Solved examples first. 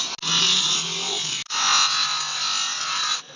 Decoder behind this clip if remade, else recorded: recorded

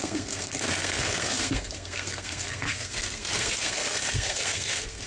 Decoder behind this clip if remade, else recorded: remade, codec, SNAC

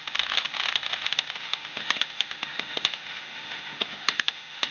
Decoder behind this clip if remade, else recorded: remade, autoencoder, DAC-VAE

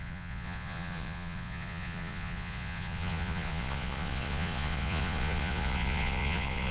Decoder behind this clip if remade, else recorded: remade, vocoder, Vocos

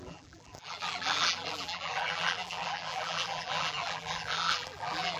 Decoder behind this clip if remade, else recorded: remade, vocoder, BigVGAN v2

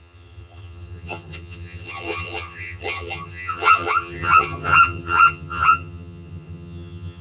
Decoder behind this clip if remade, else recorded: remade, vocoder, HiFi-GAN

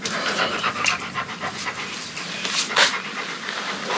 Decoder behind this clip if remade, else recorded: recorded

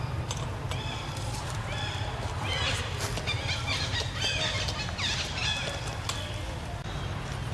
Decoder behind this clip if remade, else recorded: recorded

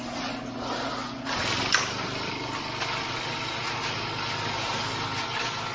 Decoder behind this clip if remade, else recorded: recorded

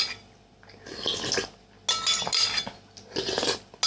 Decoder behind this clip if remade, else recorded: recorded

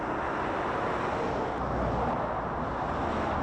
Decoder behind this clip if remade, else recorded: recorded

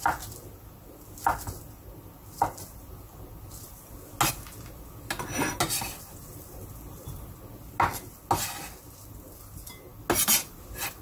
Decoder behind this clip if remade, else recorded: recorded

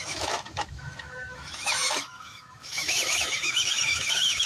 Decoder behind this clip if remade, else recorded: remade, autoencoder, DAC-VAE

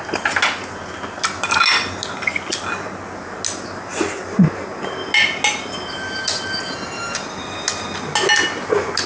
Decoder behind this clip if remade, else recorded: recorded